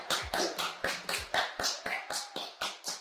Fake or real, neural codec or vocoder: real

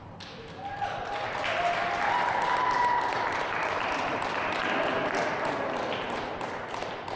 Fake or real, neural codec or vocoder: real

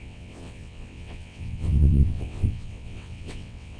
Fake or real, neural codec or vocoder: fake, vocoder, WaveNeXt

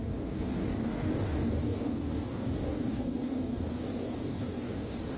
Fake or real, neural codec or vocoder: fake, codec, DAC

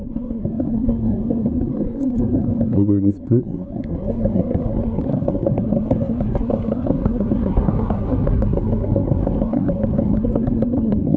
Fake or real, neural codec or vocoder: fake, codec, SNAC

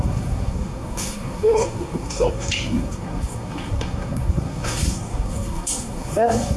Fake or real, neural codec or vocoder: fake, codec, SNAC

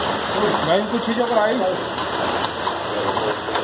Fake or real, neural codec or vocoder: real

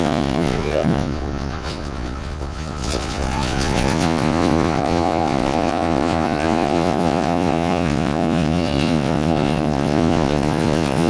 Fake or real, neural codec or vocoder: fake, vocoder, Vocos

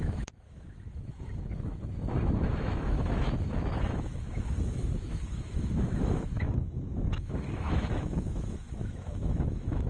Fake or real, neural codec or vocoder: fake, autoencoder, DAC-VAE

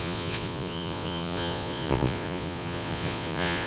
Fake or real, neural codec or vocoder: fake, vocoder, Vocos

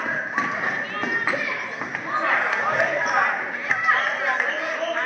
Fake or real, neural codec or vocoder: real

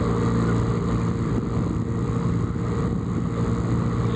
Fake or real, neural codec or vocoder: real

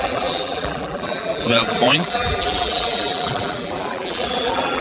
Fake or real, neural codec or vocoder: fake, vocoder, BigVGAN v2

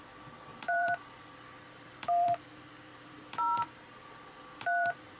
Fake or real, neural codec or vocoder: fake, vocoder, BigVGAN v2